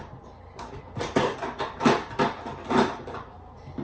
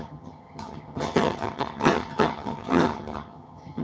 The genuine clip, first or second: first